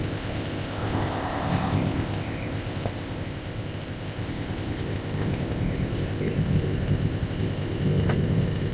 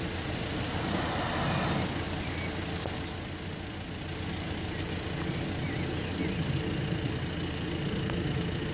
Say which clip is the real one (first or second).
second